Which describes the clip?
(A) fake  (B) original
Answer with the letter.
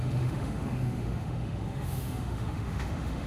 A